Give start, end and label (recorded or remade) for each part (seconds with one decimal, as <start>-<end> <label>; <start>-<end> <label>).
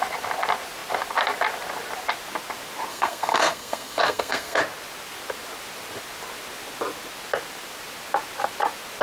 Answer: 0.0-2.9 recorded; 2.9-4.6 remade; 4.6-9.0 recorded